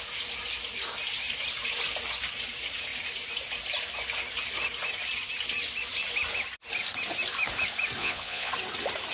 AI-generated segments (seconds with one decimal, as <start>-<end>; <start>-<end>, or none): 8.0-8.5